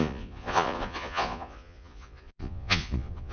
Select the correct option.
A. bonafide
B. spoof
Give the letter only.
B